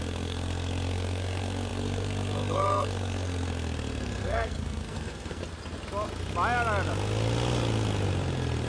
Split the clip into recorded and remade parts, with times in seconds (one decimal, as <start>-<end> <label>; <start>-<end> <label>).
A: 0.0-5.4 remade; 5.4-8.7 recorded